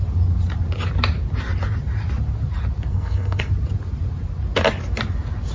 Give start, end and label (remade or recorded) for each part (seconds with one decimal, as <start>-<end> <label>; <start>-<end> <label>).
0.0-2.9 recorded; 2.9-3.5 remade; 3.5-5.5 recorded